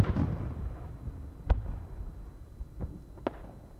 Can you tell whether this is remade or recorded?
recorded